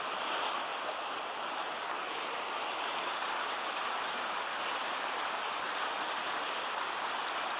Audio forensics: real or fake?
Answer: real